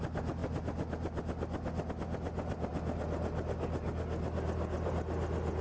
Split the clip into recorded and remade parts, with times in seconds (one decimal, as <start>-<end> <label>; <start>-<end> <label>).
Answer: 0.0-5.6 recorded